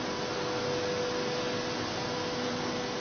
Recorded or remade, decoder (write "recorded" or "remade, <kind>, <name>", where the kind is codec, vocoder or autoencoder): recorded